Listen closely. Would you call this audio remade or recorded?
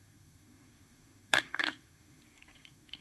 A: remade